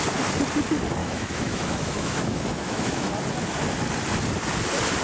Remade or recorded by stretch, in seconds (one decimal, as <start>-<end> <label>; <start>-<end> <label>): 0.0-1.0 recorded; 1.0-3.1 remade; 3.1-5.0 recorded